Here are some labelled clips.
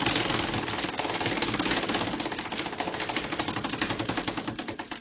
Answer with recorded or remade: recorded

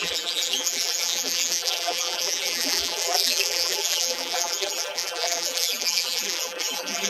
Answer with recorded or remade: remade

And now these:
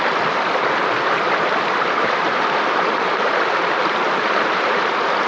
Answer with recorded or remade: remade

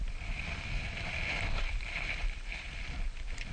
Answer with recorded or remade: remade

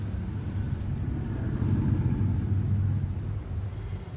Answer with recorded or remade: recorded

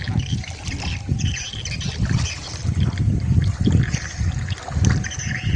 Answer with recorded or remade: remade